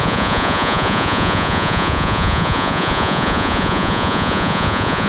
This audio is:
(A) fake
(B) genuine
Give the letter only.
A